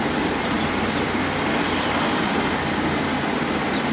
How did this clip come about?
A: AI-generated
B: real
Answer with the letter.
A